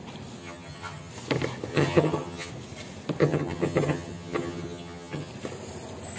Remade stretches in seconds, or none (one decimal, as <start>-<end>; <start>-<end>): 0.4-1.1; 1.7-2.5; 3.2-5.3